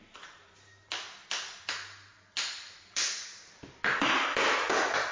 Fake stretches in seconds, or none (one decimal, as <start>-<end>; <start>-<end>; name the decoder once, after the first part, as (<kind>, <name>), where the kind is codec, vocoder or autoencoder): none